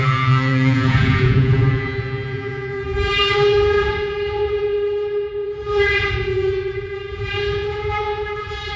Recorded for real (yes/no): no